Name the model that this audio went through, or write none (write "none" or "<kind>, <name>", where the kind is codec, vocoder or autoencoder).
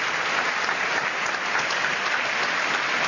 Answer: none